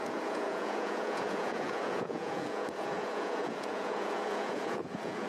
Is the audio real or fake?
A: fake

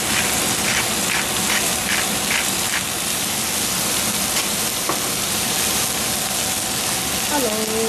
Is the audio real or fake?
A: real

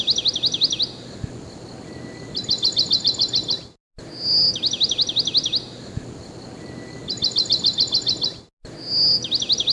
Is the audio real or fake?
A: real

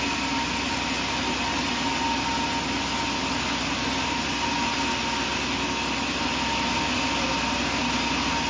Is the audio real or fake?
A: real